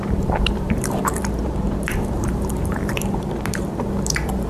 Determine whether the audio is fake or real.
fake